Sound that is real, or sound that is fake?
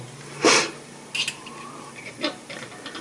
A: real